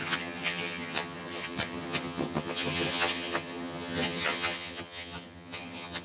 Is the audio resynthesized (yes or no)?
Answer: yes